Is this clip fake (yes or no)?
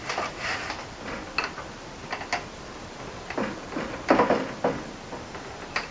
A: no